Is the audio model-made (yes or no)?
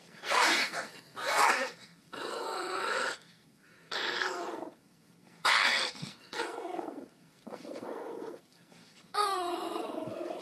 yes